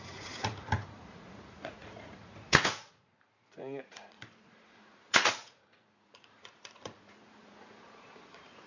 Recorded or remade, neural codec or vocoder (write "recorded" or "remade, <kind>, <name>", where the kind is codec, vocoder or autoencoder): remade, vocoder, Vocos